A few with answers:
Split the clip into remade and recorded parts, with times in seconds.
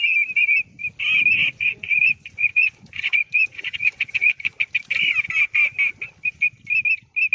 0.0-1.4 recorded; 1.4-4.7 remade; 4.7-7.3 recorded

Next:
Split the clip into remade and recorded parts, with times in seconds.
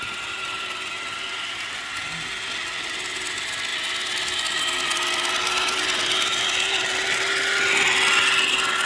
0.0-8.9 recorded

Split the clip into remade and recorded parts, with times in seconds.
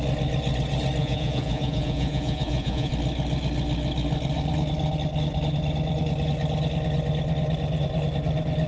0.0-1.0 recorded; 1.0-2.9 remade; 2.9-8.7 recorded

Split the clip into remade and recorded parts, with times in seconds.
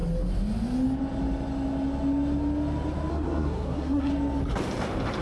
0.0-3.1 recorded; 3.1-4.1 remade; 4.1-5.2 recorded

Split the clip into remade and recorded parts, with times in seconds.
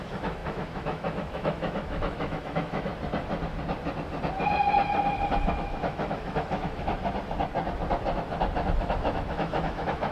0.0-2.9 remade; 2.9-5.5 recorded; 5.5-6.9 remade; 6.9-8.8 recorded; 8.8-10.1 remade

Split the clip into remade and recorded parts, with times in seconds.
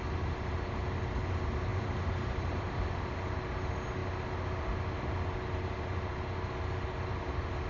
0.0-1.7 recorded; 1.7-3.0 remade; 3.0-7.7 recorded